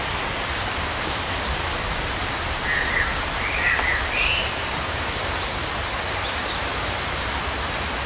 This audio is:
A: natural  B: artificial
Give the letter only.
B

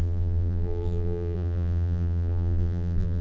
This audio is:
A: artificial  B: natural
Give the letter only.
A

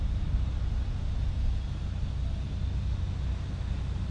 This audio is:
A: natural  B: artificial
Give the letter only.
A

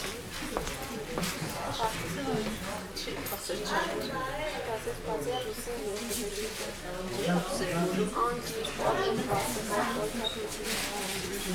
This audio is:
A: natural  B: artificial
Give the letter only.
A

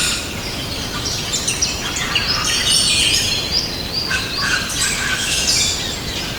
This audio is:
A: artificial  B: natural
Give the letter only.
B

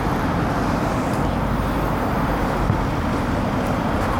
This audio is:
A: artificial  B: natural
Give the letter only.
B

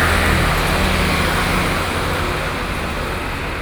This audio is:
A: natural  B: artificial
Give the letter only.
A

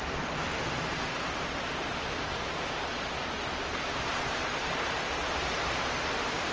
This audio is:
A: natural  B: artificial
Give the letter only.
B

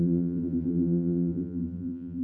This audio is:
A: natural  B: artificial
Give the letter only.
B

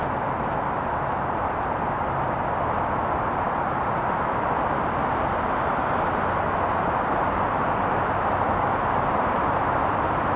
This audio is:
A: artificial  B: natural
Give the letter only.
B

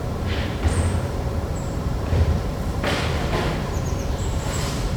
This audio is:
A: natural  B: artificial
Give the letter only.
B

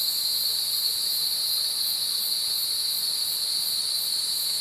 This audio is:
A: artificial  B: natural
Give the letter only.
B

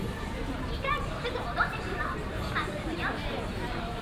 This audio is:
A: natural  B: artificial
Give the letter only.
B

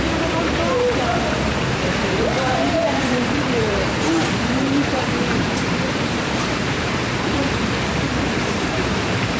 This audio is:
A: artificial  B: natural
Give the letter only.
A